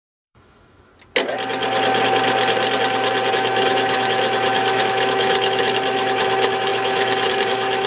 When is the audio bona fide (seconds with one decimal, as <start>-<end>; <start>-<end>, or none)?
0.9-3.3